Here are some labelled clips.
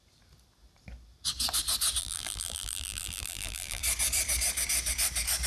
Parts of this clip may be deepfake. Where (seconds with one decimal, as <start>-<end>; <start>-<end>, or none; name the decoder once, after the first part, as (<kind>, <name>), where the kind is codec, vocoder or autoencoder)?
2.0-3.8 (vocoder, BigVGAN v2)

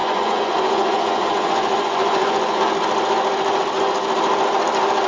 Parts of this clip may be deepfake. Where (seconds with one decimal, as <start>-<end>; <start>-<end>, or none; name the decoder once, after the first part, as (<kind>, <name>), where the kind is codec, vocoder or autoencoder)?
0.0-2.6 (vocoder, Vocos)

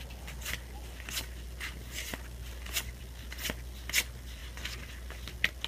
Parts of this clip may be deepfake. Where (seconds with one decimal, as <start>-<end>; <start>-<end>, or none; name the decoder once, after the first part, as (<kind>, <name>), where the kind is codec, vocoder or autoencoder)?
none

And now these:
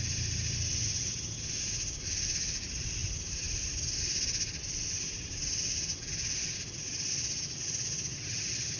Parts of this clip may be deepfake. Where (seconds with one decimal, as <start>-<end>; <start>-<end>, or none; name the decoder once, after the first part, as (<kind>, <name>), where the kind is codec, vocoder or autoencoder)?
none

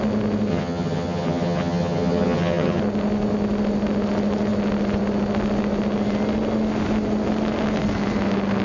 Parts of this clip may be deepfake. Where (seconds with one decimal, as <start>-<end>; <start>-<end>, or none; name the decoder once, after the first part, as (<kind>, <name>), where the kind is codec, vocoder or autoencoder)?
0.5-2.8 (vocoder, HiFi-GAN)

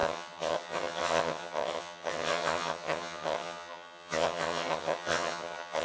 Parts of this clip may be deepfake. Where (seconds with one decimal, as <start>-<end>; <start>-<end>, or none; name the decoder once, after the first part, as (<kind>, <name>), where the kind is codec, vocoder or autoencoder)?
0.0-5.8 (vocoder, HiFi-GAN)

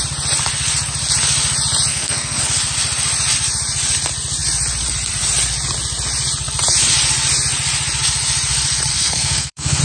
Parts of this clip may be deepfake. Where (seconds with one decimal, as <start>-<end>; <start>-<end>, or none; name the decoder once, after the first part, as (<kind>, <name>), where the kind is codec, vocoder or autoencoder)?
1.9-2.4 (codec, SNAC); 8.9-9.8